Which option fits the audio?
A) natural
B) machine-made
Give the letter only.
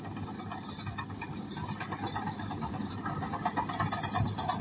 A